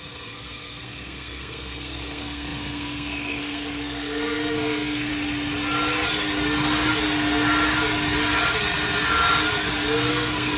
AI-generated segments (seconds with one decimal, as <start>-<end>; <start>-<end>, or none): 0.0-5.1; 10.1-10.6